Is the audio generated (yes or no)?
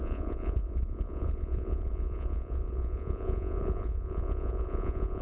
yes